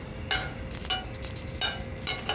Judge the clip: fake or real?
real